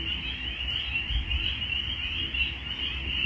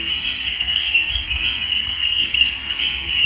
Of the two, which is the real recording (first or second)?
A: first